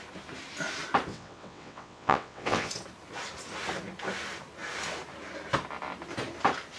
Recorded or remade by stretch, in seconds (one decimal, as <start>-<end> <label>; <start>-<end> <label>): 0.0-1.1 recorded; 1.1-2.7 remade; 2.7-6.8 recorded